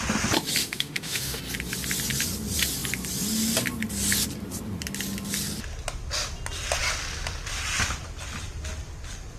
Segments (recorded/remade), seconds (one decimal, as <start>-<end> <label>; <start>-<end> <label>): 0.0-0.6 recorded; 0.6-1.4 remade; 1.4-9.4 recorded